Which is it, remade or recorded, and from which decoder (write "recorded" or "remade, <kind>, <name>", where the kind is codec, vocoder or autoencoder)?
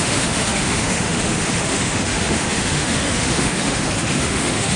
remade, autoencoder, DAC-VAE